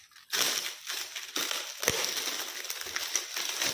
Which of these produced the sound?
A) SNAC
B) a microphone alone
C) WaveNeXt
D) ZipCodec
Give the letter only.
B